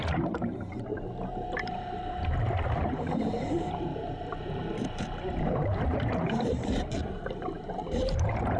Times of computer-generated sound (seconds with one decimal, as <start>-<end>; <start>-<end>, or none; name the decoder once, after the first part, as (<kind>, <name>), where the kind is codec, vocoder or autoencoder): 0.0-8.6 (vocoder, BigVGAN v2)